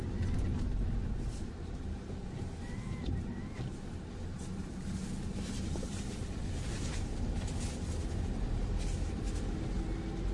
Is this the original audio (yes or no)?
yes